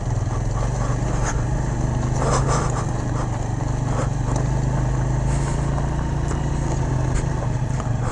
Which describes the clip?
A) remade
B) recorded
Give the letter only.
B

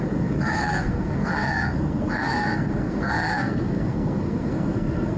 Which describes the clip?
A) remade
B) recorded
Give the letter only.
A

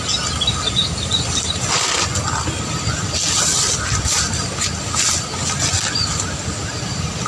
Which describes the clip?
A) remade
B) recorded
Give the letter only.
B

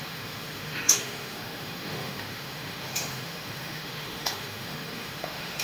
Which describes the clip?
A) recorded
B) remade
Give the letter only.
B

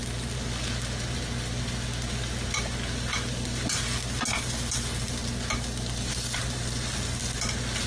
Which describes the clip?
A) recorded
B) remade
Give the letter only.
A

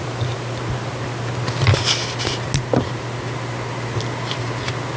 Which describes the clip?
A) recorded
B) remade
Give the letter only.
A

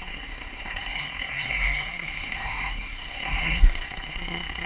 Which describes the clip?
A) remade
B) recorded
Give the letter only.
A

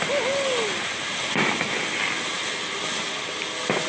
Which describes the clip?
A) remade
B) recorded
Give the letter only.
B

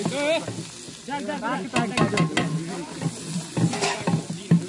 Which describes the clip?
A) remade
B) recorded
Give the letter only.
B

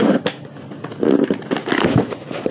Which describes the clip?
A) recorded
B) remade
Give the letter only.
A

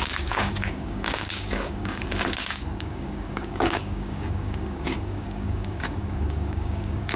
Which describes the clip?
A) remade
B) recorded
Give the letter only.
A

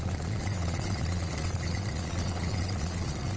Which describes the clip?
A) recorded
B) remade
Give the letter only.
B